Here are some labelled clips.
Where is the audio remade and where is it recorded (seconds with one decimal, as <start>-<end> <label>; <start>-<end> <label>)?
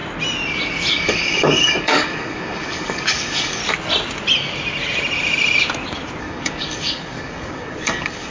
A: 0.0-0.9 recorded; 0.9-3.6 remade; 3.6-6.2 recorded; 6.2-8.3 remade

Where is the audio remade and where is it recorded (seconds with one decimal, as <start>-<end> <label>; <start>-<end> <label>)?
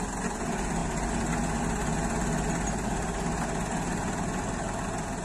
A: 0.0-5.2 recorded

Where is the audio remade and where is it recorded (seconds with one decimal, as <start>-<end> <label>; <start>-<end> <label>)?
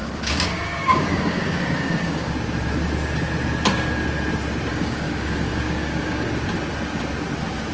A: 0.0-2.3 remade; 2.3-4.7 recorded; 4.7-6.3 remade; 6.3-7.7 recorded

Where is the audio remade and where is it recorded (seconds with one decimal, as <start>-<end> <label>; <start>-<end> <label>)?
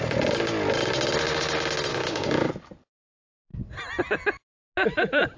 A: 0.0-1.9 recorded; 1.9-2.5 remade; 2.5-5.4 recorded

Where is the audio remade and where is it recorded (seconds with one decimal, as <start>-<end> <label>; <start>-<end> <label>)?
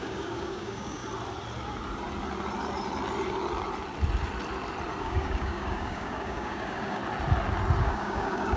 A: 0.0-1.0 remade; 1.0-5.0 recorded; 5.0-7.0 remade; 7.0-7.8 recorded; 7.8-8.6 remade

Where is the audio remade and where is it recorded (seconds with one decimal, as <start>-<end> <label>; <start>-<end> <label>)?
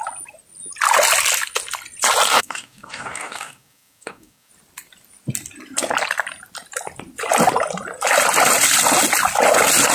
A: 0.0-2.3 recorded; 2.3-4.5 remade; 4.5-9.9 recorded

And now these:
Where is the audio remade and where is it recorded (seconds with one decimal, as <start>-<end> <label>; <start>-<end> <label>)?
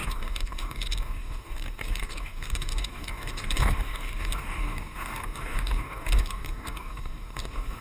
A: 0.0-7.8 remade